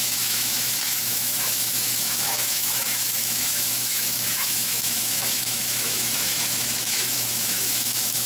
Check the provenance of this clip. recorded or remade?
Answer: remade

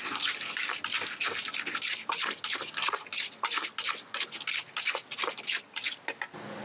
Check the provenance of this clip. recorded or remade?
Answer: recorded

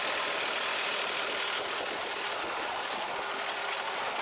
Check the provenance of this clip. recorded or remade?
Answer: recorded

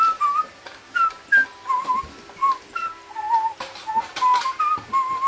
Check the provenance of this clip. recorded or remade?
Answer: recorded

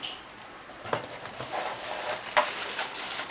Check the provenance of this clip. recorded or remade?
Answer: remade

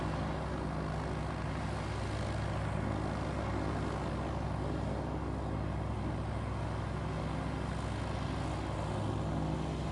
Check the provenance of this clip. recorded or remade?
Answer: recorded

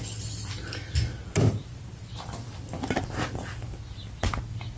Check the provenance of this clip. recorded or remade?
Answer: recorded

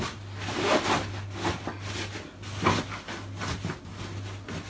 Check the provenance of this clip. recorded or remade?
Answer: recorded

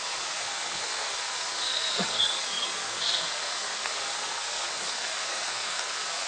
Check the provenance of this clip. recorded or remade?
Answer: remade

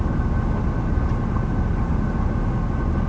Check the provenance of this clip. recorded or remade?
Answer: recorded